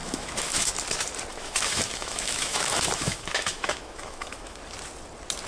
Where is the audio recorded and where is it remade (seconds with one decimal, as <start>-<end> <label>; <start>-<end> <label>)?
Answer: 0.0-0.7 remade; 0.7-1.3 recorded; 1.3-4.6 remade; 4.6-5.5 recorded